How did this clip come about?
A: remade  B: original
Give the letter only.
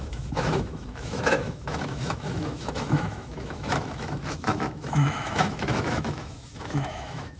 A